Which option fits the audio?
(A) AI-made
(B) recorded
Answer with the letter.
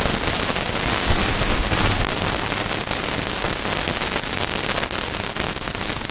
B